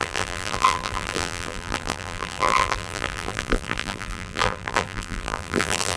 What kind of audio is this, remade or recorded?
remade